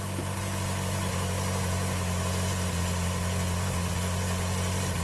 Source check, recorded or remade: recorded